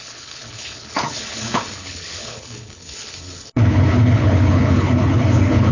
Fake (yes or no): yes